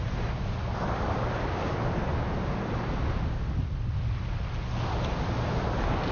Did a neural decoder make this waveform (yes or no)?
no